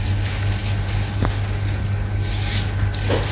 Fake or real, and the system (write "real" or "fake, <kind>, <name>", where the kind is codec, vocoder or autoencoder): real